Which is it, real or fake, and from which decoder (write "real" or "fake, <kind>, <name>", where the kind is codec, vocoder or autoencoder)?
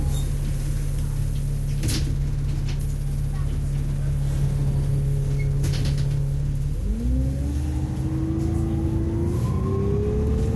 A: real